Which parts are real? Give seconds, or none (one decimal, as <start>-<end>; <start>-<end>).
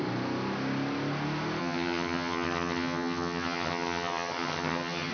0.0-1.6